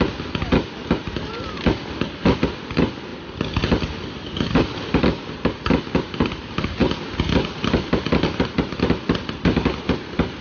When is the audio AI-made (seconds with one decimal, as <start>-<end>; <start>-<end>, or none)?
none